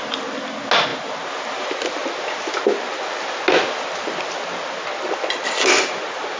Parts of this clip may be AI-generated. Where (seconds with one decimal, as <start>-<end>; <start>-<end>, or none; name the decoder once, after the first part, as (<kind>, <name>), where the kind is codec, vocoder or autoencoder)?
none